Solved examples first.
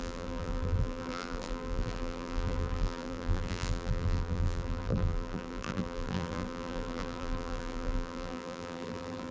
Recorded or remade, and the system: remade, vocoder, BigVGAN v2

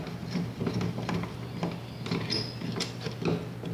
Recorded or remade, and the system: recorded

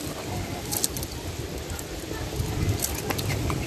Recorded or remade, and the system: recorded